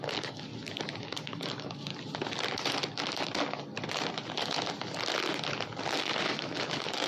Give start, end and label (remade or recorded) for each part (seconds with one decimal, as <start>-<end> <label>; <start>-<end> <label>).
0.0-0.5 remade; 0.5-1.0 recorded; 1.0-1.9 remade; 1.9-6.2 recorded; 6.2-7.1 remade